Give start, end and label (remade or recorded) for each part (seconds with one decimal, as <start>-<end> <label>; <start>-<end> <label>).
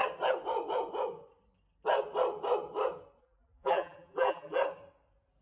0.0-3.2 recorded; 3.2-4.6 remade; 4.6-5.4 recorded